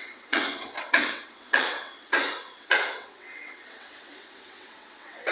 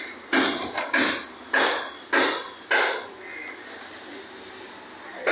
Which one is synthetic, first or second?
first